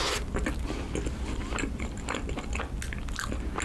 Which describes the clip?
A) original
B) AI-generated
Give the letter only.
A